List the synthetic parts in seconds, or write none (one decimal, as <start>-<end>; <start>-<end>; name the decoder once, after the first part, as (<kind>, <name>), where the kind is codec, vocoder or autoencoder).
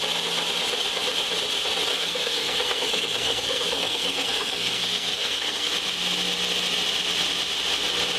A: 1.9-5.7 (codec, SNAC)